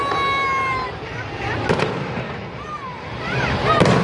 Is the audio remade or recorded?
recorded